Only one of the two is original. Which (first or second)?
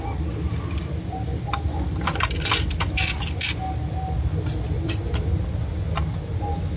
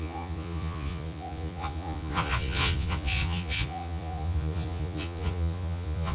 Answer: first